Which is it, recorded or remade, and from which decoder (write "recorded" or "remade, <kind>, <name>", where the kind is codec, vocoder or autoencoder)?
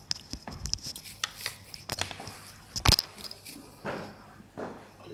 recorded